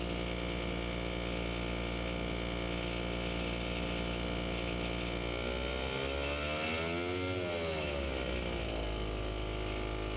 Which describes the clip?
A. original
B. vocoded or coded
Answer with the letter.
A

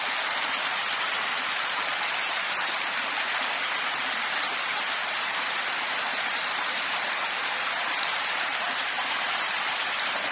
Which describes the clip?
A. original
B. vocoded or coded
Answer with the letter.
B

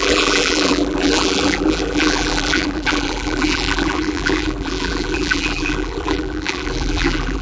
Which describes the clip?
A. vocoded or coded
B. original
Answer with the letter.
A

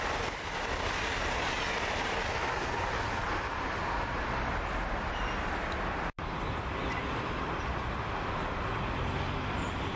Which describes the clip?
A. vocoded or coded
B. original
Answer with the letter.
B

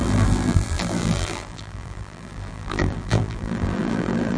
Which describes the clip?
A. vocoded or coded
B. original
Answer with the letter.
A